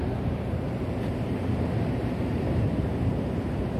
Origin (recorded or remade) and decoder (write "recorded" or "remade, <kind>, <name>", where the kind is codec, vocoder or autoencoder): remade, vocoder, BigVGAN v2